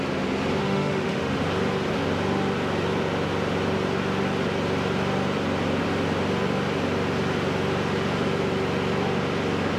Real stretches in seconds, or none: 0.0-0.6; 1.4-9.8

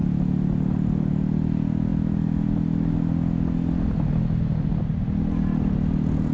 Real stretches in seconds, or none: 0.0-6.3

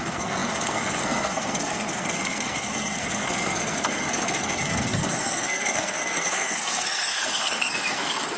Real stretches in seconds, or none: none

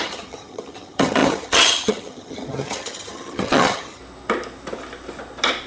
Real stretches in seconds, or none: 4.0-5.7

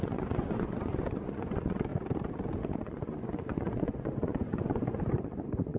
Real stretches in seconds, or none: 1.9-2.8